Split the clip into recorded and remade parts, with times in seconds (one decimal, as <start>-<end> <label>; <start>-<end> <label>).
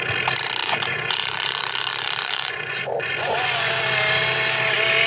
0.0-0.6 recorded; 0.6-3.7 remade; 3.7-5.1 recorded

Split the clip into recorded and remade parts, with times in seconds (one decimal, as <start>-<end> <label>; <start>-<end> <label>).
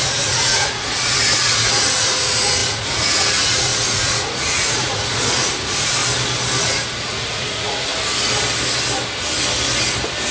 0.0-6.0 remade; 6.0-6.6 recorded; 6.6-7.9 remade; 7.9-10.3 recorded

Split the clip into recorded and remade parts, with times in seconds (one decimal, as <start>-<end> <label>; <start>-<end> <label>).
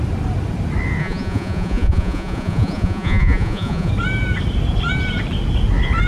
0.0-1.0 recorded; 1.0-3.9 remade; 3.9-6.1 recorded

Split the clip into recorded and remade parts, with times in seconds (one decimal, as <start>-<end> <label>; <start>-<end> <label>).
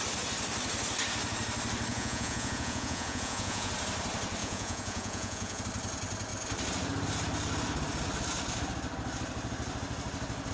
0.0-1.9 recorded; 1.9-3.7 remade; 3.7-4.4 recorded; 4.4-5.6 remade; 5.6-10.5 recorded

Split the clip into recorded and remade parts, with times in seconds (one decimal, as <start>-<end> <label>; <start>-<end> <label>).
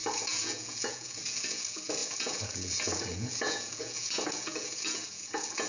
0.0-5.7 remade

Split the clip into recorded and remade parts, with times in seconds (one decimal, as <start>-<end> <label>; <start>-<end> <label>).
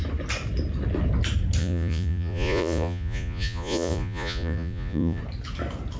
0.0-1.6 recorded; 1.6-5.2 remade; 5.2-6.0 recorded